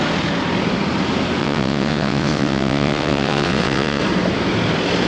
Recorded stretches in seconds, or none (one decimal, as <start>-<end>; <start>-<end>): 0.0-1.4; 4.0-5.1